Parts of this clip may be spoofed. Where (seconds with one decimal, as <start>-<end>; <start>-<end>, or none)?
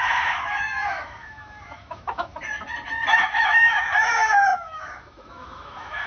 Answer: 0.0-2.3; 3.2-6.1